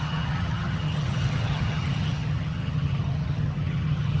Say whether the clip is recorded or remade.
remade